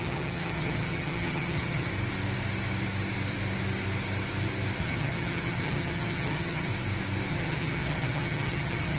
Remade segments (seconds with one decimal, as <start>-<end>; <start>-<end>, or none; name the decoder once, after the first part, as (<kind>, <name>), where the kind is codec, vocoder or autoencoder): 0.0-1.9 (vocoder, HiFi-GAN); 4.8-6.7; 7.3-9.0